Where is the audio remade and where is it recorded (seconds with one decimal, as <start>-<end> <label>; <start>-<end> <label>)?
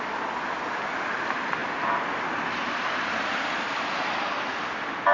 0.0-1.6 recorded; 1.6-5.1 remade